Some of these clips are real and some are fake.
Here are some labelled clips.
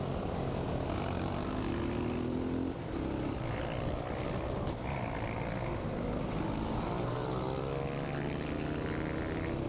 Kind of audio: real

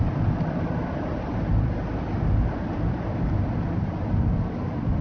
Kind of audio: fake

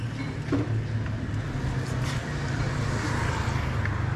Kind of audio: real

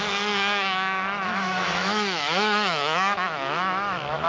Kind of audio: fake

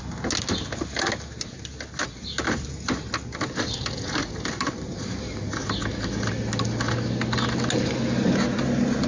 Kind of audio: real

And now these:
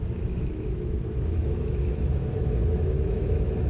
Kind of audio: fake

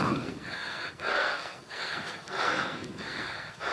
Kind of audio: fake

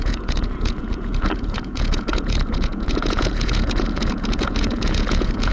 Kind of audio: fake